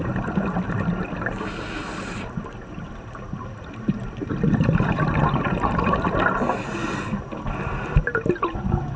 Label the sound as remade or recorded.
recorded